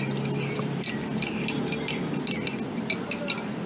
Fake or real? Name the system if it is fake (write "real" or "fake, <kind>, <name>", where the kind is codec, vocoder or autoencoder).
real